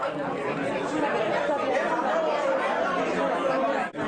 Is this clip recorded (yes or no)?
yes